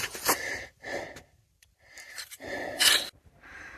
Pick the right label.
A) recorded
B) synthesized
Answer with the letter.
B